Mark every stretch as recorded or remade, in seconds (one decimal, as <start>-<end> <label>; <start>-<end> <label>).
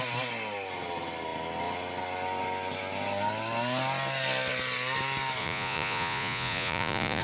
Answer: 0.0-5.4 recorded; 5.4-7.2 remade